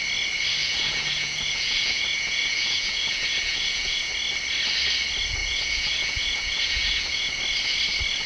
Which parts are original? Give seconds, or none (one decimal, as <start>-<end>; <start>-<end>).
0.0-0.6; 4.1-5.4; 7.3-8.3

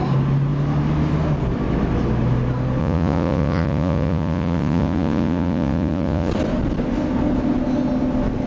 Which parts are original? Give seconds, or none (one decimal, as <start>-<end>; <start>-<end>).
0.0-2.8; 6.3-8.5

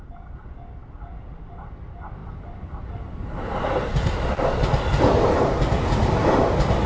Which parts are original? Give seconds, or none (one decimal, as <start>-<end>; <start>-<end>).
0.0-6.9

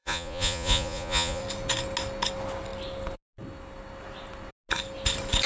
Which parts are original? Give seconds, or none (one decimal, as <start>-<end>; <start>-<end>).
1.4-5.5

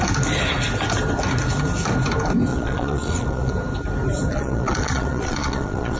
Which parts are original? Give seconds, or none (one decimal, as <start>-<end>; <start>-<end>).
0.0-2.5; 3.5-4.3

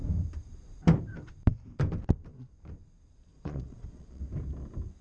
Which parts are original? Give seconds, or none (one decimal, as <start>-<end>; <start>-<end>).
0.0-3.3; 4.2-5.0

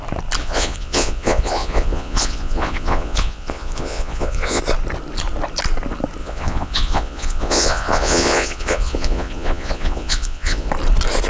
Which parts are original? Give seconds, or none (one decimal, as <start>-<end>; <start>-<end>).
0.0-0.4; 4.6-6.2; 10.7-11.3